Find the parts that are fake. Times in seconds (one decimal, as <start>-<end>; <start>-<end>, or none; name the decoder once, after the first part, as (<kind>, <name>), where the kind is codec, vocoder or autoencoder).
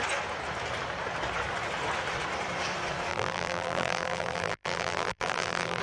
3.1-5.8 (vocoder, BigVGAN v2)